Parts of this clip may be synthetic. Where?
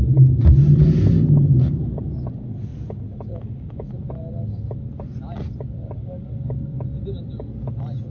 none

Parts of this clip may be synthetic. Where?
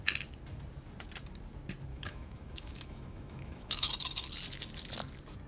1.9-3.9 (autoencoder, DAC-VAE)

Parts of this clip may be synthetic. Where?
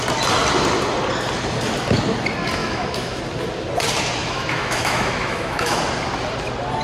2.6-3.2 (autoencoder, DAC-VAE); 4.2-5.8